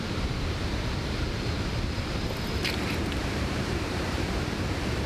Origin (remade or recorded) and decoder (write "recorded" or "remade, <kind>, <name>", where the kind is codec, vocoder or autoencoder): remade, vocoder, BigVGAN v2